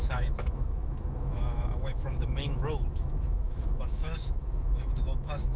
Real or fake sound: fake